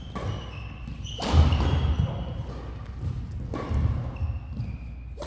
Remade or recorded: recorded